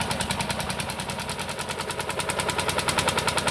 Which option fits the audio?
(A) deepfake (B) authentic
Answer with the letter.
B